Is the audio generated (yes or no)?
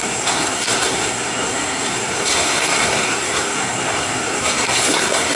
yes